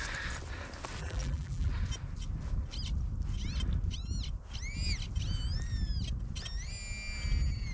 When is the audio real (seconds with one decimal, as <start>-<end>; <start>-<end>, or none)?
0.0-1.0; 1.7-7.7